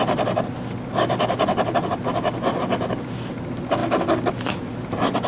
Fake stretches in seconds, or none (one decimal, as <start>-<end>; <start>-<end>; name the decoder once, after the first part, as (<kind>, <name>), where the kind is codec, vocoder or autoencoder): none